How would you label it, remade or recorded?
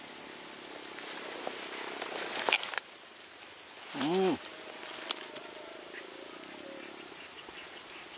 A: recorded